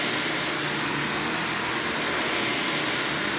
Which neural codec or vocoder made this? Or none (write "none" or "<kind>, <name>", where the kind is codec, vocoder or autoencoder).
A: none